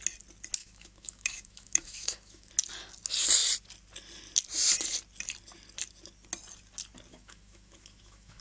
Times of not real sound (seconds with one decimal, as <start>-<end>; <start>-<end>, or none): 0.6-2.5; 7.1-8.4